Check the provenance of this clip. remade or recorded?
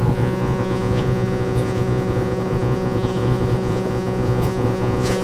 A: remade